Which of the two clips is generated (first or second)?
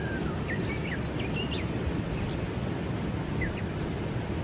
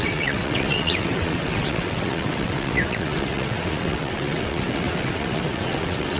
second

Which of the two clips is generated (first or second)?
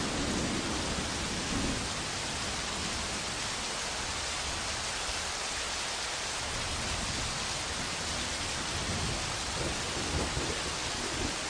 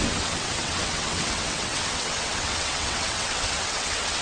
second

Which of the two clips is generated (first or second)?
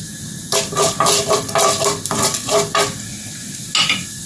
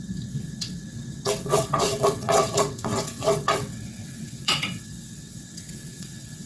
second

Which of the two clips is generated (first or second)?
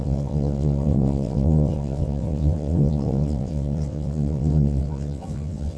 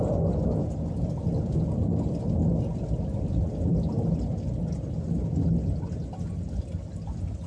first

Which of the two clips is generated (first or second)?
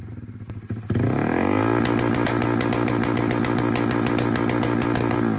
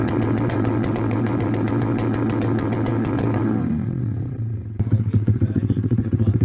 second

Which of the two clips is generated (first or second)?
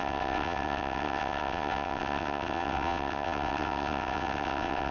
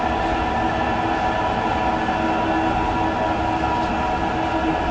first